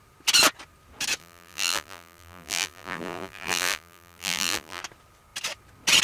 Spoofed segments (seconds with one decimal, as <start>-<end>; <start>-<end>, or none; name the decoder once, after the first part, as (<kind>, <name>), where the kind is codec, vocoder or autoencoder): 1.2-4.8 (vocoder, BigVGAN v2)